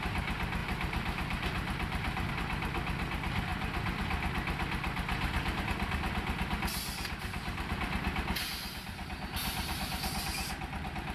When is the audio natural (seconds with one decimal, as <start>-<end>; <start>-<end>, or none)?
0.0-0.6; 2.3-11.1